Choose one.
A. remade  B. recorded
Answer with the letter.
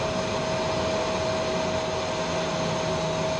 B